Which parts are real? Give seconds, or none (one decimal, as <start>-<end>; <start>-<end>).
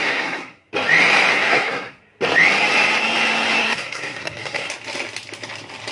0.7-1.3; 2.0-3.6; 4.7-5.9